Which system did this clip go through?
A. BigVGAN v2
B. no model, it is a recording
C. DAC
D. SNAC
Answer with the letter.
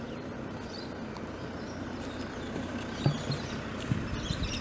B